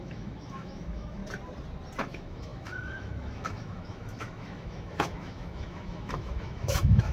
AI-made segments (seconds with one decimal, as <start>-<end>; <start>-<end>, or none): 0.0-1.2; 2.0-7.1